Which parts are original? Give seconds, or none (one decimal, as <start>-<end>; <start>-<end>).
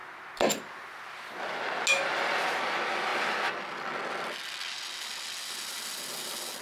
0.0-6.6